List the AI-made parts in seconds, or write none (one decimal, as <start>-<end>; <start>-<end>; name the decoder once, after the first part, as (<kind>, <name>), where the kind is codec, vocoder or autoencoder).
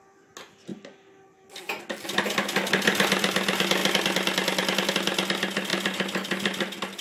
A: none